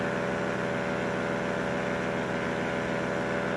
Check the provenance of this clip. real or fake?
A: real